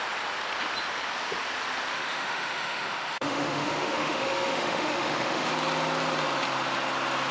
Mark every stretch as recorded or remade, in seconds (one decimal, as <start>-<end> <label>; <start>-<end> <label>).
0.0-1.9 recorded; 1.9-5.5 remade; 5.5-7.3 recorded